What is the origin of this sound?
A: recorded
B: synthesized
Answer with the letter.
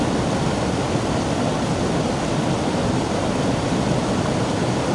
A